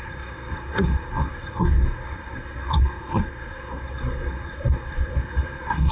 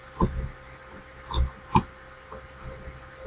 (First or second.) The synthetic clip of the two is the first